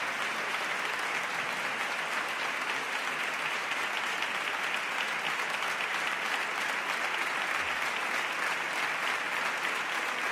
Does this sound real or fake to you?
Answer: real